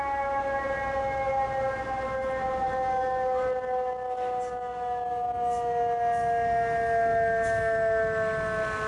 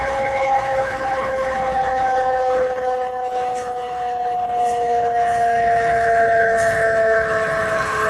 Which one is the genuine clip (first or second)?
first